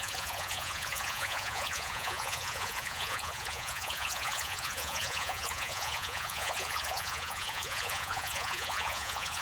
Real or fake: fake